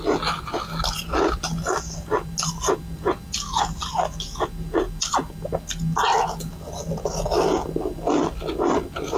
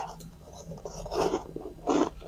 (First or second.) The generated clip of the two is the second